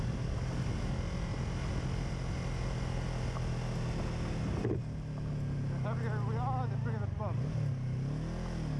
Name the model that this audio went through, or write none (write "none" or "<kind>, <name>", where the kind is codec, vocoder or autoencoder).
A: none